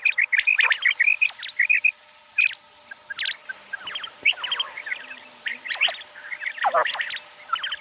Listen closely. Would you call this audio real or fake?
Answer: real